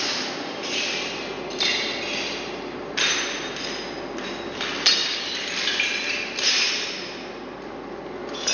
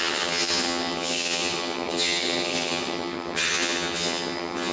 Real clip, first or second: first